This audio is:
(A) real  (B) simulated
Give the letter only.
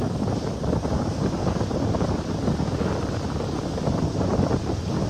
A